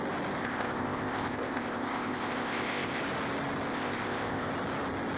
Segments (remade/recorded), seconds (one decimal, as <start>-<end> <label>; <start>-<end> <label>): 0.0-0.4 recorded; 0.4-3.0 remade; 3.0-3.7 recorded; 3.7-4.5 remade; 4.5-5.2 recorded